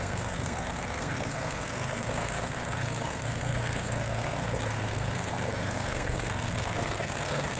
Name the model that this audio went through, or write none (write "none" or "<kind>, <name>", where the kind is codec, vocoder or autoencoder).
codec, SNAC